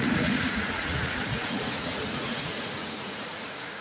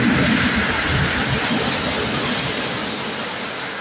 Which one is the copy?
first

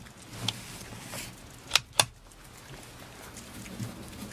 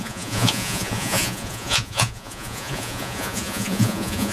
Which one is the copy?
second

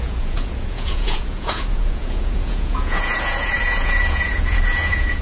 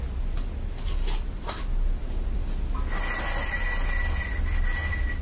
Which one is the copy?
first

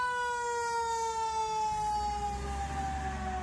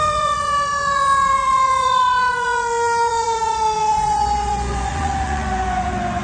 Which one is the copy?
second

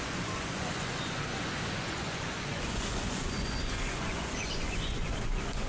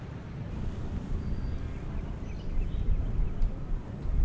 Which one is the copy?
first